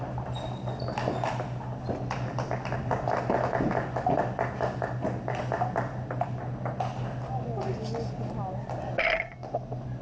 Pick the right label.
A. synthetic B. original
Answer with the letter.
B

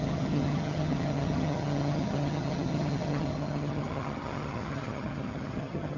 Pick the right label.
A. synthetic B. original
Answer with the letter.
A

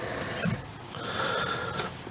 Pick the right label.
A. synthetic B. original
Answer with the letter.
B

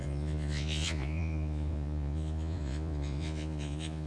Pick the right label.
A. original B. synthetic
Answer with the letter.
B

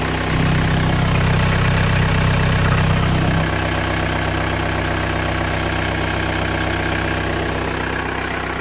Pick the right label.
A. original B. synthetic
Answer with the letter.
A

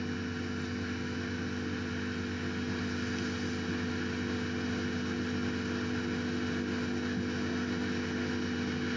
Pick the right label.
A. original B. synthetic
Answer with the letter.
A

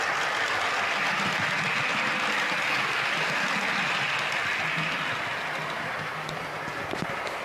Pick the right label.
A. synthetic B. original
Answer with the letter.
B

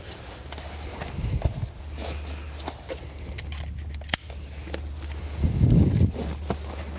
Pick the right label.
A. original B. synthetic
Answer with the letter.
A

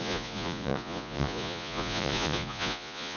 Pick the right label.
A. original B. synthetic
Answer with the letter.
B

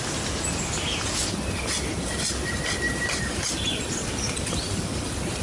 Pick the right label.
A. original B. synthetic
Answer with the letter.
A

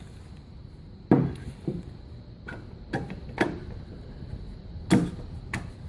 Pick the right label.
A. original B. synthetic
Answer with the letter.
A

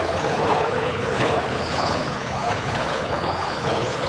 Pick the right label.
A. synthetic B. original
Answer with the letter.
A